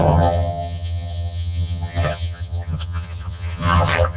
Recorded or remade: remade